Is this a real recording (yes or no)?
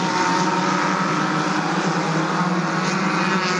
yes